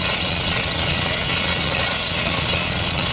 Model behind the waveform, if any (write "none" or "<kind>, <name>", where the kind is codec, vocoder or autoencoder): vocoder, Vocos